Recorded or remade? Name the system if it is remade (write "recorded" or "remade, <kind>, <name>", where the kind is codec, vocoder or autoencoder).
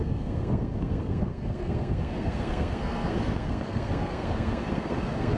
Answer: remade, codec, SNAC